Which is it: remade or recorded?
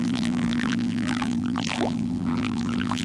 remade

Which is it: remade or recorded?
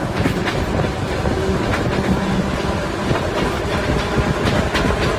recorded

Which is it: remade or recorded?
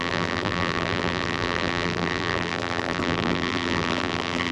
remade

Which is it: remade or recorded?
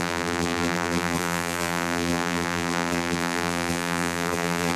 remade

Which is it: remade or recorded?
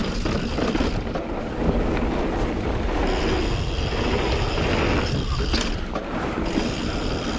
recorded